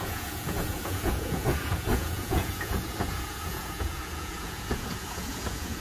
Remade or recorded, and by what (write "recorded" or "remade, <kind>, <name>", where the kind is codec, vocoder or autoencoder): remade, vocoder, Vocos